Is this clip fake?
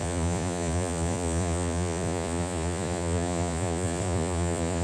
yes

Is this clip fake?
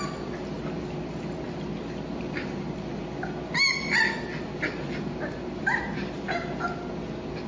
no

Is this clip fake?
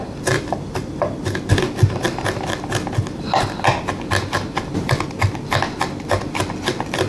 no